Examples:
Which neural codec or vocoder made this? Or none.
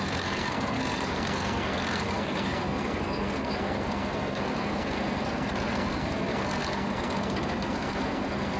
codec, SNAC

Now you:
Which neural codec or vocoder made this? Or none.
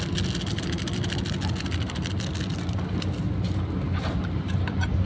none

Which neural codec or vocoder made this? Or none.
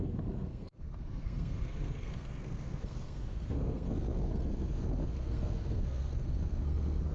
codec, SNAC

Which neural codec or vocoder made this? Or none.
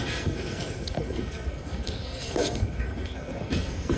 codec, SNAC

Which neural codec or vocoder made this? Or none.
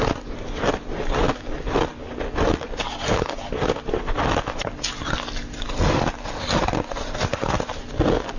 none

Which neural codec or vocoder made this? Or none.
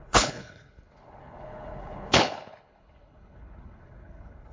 codec, HILCodec